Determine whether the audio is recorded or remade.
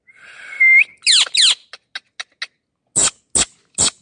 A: recorded